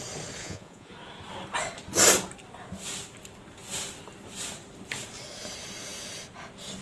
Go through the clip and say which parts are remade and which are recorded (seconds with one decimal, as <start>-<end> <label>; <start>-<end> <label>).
0.0-0.4 recorded; 0.4-0.9 remade; 0.9-6.8 recorded